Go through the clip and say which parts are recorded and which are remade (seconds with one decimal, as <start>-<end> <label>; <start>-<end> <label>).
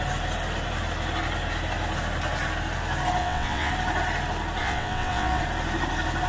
0.0-3.2 recorded; 3.2-3.7 remade; 3.7-4.6 recorded; 4.6-5.4 remade; 5.4-6.3 recorded